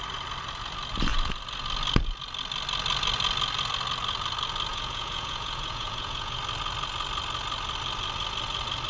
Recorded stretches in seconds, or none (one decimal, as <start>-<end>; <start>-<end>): 0.0-4.7; 6.4-8.9